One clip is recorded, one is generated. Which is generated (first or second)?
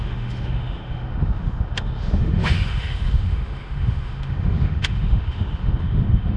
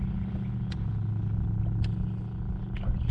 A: first